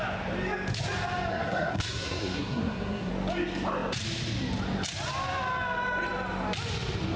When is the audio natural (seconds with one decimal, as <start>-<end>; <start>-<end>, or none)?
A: 0.0-1.3; 3.1-7.2